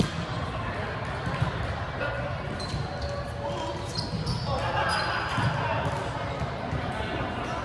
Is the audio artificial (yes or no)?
no